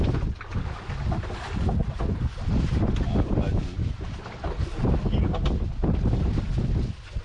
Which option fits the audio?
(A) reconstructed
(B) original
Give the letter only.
B